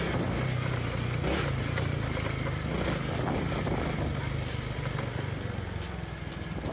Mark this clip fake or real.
real